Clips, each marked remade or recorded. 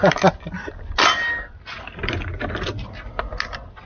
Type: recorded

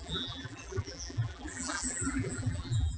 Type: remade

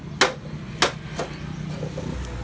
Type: recorded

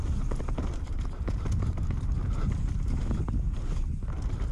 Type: recorded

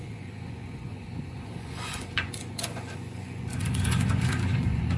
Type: remade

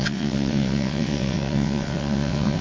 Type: remade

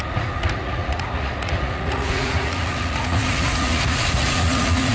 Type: remade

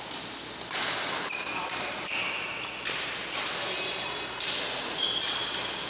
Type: recorded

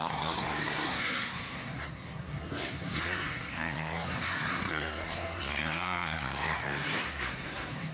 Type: remade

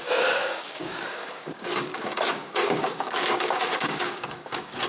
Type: remade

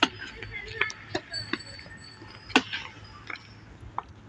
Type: recorded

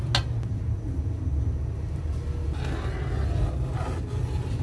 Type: recorded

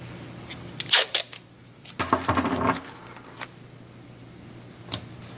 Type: recorded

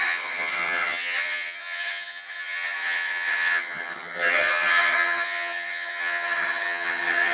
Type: remade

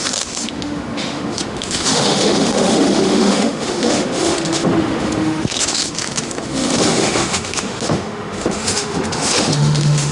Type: remade